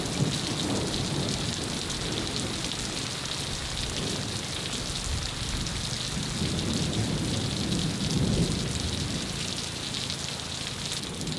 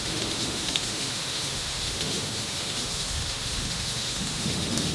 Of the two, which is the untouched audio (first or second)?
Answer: first